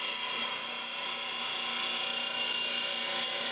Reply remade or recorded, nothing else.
recorded